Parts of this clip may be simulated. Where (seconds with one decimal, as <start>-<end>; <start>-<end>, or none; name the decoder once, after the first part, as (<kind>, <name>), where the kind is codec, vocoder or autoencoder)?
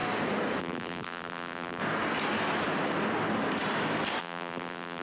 0.6-1.8 (vocoder, BigVGAN v2); 4.2-5.0